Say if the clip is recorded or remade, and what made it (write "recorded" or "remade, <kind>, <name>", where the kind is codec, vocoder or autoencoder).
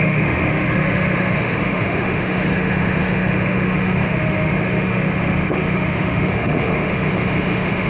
remade, autoencoder, DAC-VAE